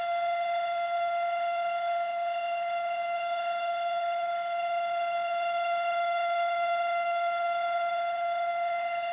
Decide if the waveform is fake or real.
fake